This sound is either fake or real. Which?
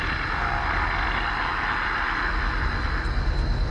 real